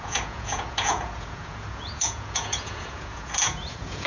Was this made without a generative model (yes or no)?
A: no